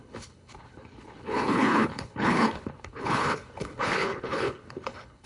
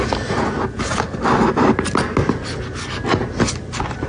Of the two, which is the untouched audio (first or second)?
second